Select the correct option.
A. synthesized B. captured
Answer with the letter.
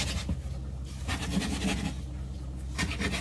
B